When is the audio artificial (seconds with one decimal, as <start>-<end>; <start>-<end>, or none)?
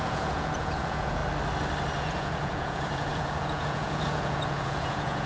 0.0-1.2; 2.0-5.3